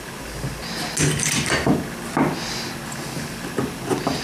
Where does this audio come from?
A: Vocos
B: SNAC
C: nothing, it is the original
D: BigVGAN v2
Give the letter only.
C